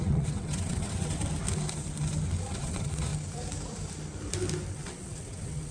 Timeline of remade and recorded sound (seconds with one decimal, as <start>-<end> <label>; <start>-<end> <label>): 0.0-1.2 remade; 1.2-2.5 recorded; 2.5-3.1 remade; 3.1-4.7 recorded; 4.7-5.7 remade